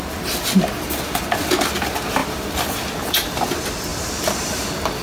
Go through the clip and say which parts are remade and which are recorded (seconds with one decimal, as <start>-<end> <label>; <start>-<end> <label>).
0.0-2.2 recorded; 2.2-3.5 remade; 3.5-3.9 recorded; 3.9-4.6 remade; 4.6-5.0 recorded